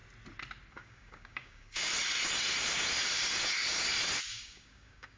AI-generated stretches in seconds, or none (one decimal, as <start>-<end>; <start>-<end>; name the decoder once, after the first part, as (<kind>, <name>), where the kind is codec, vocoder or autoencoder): 0.7-1.9 (codec, DAC); 4.3-5.2